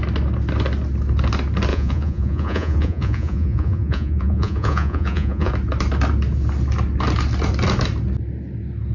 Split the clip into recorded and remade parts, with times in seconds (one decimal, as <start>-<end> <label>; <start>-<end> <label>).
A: 0.0-1.7 recorded; 1.7-5.5 remade; 5.5-8.9 recorded